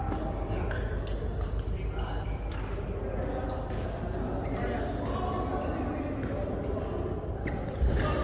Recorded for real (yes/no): yes